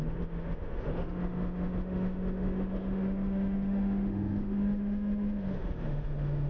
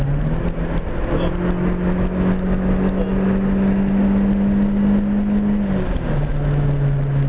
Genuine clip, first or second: second